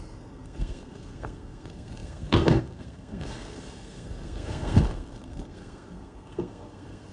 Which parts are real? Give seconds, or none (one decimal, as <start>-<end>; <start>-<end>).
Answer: none